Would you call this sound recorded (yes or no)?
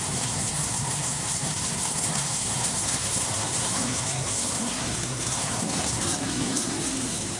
no